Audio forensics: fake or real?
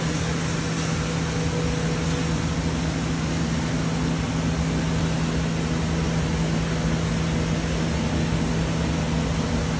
real